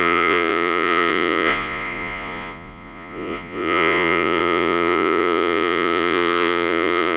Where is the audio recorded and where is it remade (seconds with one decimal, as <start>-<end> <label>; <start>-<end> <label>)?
0.0-7.2 remade